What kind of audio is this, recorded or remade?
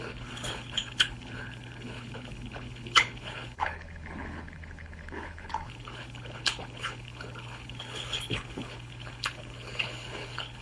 remade